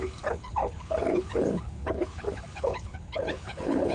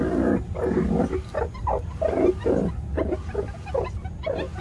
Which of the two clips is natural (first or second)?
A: second